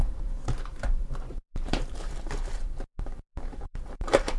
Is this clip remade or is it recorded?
remade